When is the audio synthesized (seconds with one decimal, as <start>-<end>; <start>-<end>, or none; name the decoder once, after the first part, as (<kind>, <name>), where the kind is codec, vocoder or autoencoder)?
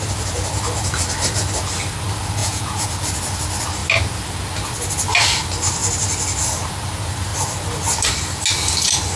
2.4-2.9 (vocoder, Vocos)